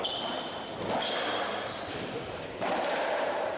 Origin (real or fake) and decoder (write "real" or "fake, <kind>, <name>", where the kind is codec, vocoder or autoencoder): fake, vocoder, BigVGAN v2